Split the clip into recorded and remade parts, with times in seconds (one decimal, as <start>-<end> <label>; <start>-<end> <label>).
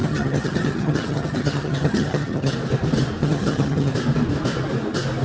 0.0-2.5 remade; 2.5-3.2 recorded; 3.2-3.9 remade; 3.9-5.2 recorded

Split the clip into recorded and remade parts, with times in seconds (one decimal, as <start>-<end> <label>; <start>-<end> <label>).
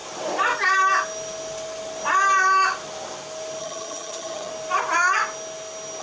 0.0-3.6 recorded; 3.6-4.5 remade; 4.5-6.0 recorded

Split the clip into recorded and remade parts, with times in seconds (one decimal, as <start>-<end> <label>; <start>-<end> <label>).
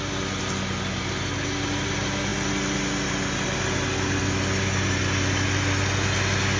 0.0-6.6 recorded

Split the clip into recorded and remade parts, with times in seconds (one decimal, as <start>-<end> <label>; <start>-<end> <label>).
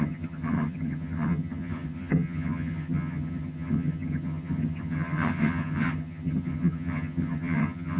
0.0-8.0 remade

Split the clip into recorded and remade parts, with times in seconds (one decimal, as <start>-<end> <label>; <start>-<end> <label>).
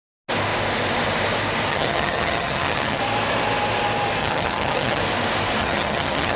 0.0-1.7 recorded; 1.7-3.0 remade; 3.0-4.2 recorded; 4.2-5.0 remade; 5.0-5.6 recorded; 5.6-6.4 remade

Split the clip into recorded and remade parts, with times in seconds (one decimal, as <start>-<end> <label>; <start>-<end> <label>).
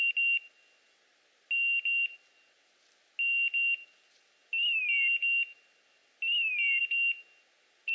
0.0-7.9 recorded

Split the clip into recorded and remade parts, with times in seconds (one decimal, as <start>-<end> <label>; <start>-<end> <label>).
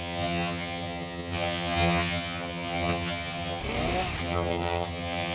0.0-3.6 remade; 3.6-4.2 recorded; 4.2-5.3 remade